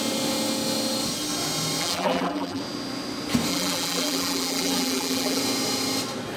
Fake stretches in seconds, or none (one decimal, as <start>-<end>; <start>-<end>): 1.8-2.6; 3.5-5.4